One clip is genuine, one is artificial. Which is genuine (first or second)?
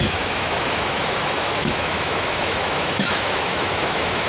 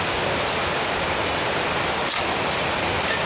second